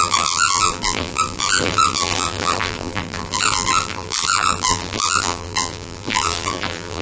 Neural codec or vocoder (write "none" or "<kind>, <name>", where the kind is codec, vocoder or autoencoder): vocoder, BigVGAN v2